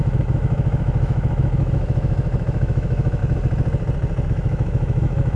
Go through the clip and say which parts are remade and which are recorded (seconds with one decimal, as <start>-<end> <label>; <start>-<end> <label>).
0.0-3.2 remade; 3.2-4.3 recorded; 4.3-5.4 remade